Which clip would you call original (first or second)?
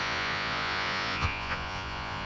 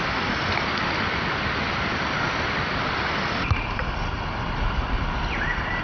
second